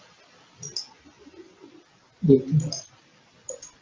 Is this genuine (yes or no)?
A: yes